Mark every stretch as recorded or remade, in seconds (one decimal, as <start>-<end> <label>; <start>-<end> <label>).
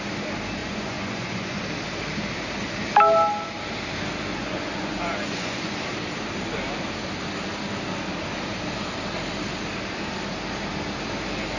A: 0.0-0.6 recorded; 0.6-1.6 remade; 1.6-4.3 recorded; 4.3-5.7 remade; 5.7-11.6 recorded